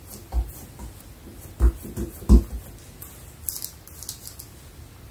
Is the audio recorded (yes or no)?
yes